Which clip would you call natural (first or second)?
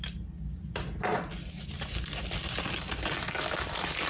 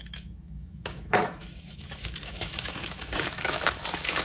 first